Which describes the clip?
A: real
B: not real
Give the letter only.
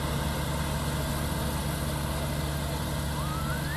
A